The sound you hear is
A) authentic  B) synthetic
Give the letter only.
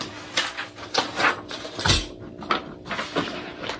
A